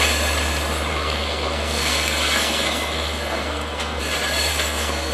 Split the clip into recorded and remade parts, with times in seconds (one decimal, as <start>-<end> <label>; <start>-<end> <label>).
0.0-0.9 recorded; 0.9-4.0 remade; 4.0-4.5 recorded; 4.5-5.1 remade